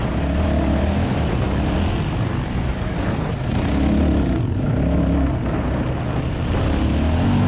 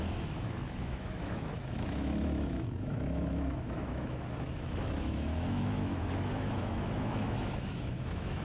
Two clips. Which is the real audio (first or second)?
first